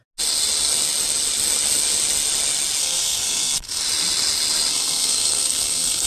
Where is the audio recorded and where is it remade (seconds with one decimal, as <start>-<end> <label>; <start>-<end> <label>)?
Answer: 0.0-2.8 recorded; 2.8-3.8 remade; 3.8-4.7 recorded; 4.7-6.1 remade